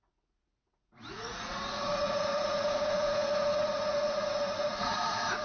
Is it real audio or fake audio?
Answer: fake